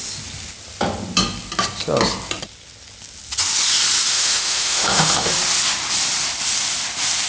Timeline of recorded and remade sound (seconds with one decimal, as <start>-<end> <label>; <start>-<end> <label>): 0.0-4.1 recorded; 4.1-5.3 remade; 5.3-7.3 recorded